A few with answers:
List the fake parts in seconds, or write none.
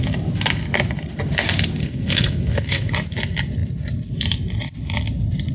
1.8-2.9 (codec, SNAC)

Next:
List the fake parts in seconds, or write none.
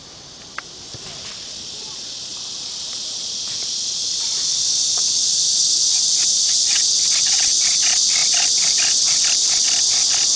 2.3-5.5 (vocoder, BigVGAN v2); 8.2-9.2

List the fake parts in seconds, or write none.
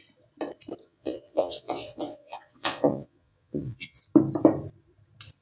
0.8-4.0 (vocoder, Vocos)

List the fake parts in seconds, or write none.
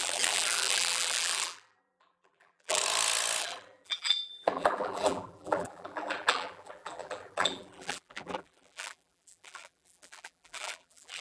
0.0-2.8 (vocoder, BigVGAN v2); 3.4-11.2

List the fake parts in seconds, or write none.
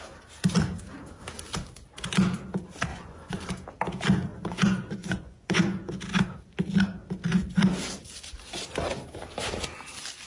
2.9-3.5 (vocoder, Vocos); 4.3-5.9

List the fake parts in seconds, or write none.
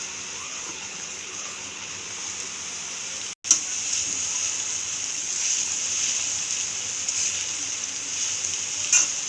0.4-1.9 (codec, HILCodec); 5.1-5.7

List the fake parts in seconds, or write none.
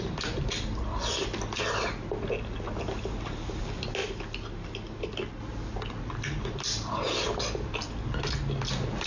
none